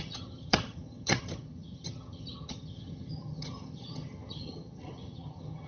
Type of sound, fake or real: fake